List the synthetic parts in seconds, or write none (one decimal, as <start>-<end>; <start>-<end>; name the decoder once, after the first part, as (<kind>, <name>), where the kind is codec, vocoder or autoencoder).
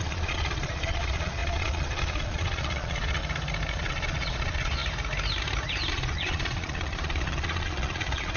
0.0-3.2 (vocoder, Vocos); 3.7-4.8; 5.9-8.4